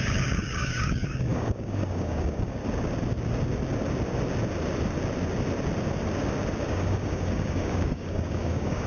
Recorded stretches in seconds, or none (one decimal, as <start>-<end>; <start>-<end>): 2.6-6.6